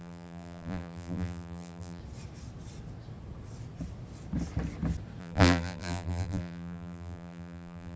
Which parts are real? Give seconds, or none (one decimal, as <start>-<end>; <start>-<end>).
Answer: 2.0-5.2